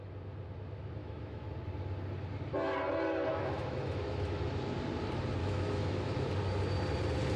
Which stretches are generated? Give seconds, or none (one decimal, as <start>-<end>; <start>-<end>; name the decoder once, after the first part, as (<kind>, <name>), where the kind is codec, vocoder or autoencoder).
1.0-1.5 (autoencoder, DAC-VAE); 3.3-4.5; 5.4-6.3